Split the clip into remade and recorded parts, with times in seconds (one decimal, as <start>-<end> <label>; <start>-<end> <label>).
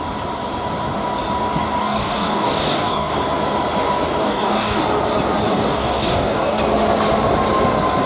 0.0-1.8 recorded; 1.8-3.2 remade; 3.2-4.2 recorded; 4.2-4.8 remade; 4.8-5.5 recorded; 5.5-6.6 remade; 6.6-8.1 recorded